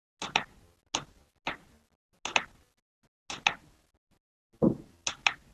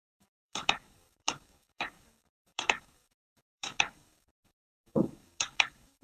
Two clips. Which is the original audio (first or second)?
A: first